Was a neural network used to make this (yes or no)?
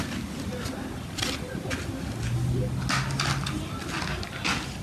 no